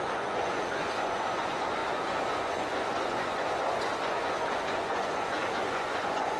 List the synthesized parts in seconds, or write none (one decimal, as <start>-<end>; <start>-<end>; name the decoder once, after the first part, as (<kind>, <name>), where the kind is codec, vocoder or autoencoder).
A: 0.0-6.4 (vocoder, Vocos)